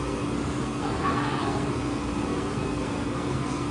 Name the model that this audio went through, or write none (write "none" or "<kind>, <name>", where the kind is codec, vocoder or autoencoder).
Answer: codec, SNAC